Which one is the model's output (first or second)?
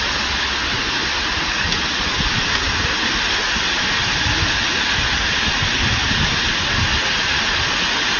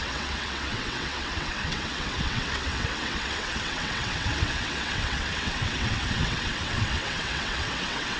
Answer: second